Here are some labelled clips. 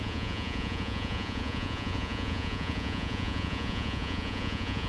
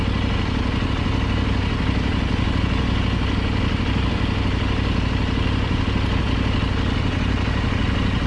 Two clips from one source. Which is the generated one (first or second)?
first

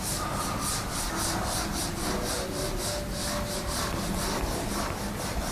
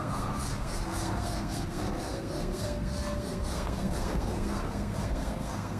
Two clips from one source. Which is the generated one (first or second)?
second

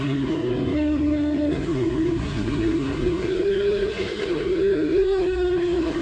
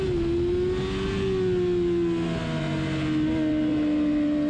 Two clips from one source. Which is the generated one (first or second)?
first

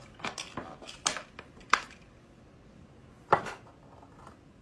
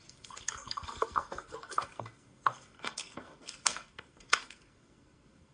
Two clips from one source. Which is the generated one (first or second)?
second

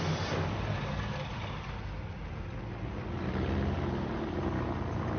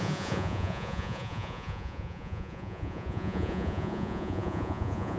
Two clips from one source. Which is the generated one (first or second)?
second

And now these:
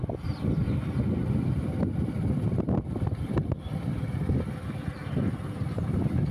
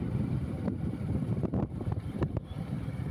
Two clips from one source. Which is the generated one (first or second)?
second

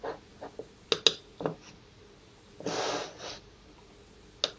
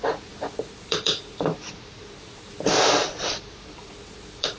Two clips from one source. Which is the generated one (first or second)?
second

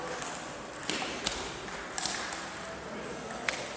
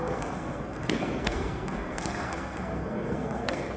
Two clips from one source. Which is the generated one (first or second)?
second